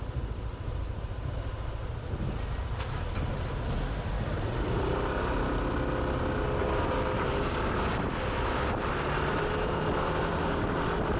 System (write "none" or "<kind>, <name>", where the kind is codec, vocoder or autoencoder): none